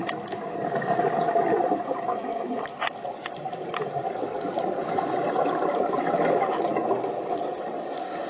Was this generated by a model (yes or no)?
no